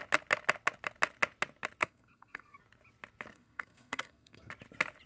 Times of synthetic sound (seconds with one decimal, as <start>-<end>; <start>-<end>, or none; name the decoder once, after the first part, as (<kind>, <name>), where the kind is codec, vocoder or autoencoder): 1.8-2.6 (codec, SNAC); 3.3-4.5